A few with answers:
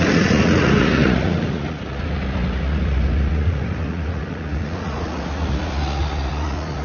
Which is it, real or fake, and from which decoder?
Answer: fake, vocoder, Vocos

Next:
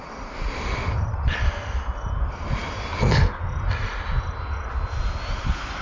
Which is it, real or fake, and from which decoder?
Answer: real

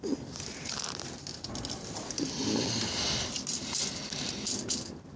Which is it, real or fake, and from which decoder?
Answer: real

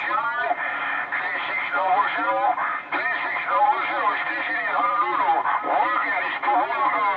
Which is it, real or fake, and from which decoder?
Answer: real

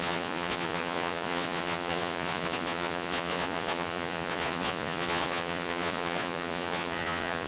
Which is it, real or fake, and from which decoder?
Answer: fake, vocoder, Vocos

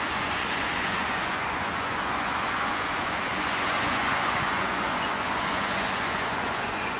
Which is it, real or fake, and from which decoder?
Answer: fake, vocoder, Vocos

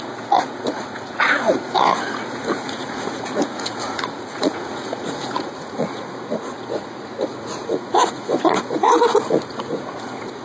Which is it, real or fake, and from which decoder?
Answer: fake, vocoder, Vocos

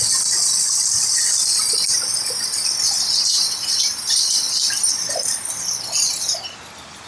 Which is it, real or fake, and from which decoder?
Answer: real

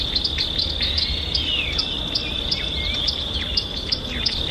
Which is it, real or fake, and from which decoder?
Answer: real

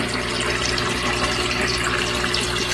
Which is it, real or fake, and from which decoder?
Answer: real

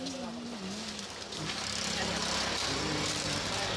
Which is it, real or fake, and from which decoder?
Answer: real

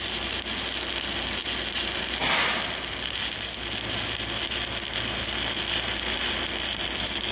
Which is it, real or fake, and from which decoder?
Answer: real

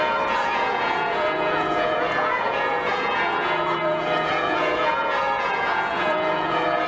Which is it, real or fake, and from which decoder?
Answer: fake, vocoder, Vocos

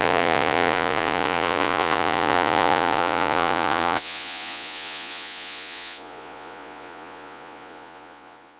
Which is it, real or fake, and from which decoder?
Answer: fake, vocoder, Vocos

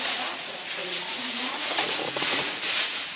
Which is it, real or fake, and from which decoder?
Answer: fake, vocoder, Vocos